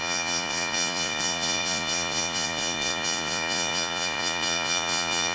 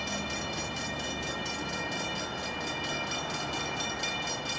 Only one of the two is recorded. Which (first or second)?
second